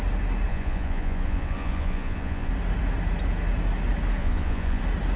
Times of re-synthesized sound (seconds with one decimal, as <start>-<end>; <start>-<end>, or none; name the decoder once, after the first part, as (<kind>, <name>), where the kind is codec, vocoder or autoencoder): 0.5-2.5 (vocoder, Vocos); 4.2-4.8